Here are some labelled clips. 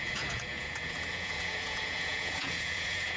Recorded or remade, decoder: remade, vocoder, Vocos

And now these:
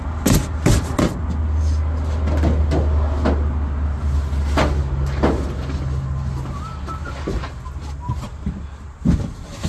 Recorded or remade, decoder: recorded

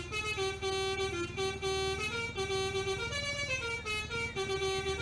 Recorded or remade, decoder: recorded